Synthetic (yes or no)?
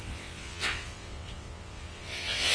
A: yes